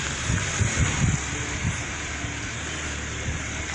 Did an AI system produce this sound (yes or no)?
no